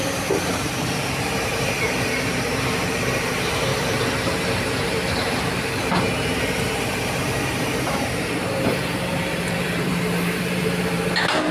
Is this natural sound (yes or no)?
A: no